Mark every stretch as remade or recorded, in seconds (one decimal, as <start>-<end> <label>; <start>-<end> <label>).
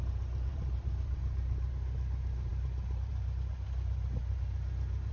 0.0-0.5 recorded; 0.5-1.7 remade; 1.7-5.1 recorded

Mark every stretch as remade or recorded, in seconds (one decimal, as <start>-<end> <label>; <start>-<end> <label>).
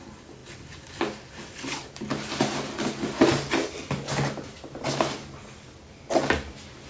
0.0-6.9 recorded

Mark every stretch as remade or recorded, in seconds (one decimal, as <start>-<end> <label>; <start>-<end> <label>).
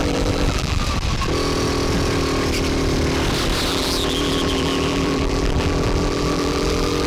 0.0-0.8 remade; 0.8-3.7 recorded; 3.7-7.1 remade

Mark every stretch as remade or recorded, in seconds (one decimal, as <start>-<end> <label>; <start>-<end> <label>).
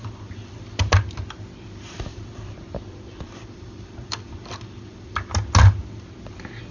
0.0-0.6 remade; 0.6-2.1 recorded; 2.1-5.3 remade; 5.3-6.7 recorded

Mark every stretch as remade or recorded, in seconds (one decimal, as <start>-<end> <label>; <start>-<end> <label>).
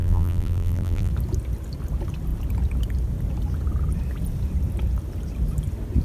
0.0-1.1 remade; 1.1-6.0 recorded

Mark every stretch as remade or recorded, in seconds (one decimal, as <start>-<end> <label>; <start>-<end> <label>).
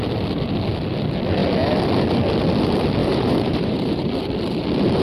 0.0-3.0 recorded; 3.0-4.1 remade; 4.1-5.0 recorded